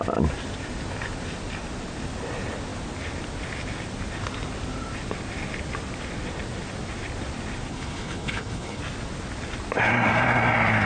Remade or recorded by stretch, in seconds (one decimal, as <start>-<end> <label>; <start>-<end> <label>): 0.0-7.7 recorded; 7.7-8.8 remade; 8.8-10.9 recorded